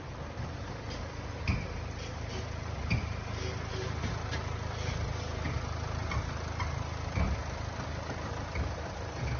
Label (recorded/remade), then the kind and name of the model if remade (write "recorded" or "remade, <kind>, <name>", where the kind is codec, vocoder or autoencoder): recorded